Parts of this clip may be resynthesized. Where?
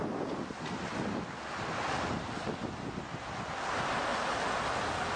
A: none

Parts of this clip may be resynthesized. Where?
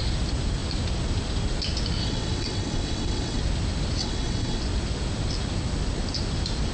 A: 2.0-3.4 (vocoder, WaveNeXt); 4.0-4.6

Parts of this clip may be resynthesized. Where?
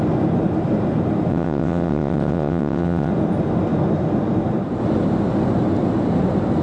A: 1.3-3.1 (vocoder, WaveNeXt)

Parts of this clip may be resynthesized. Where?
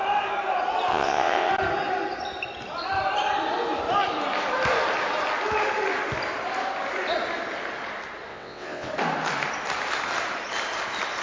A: 0.9-1.5 (vocoder, WaveNeXt); 8.3-8.9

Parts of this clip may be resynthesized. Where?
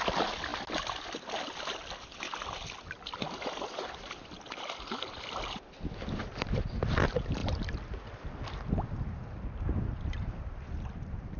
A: none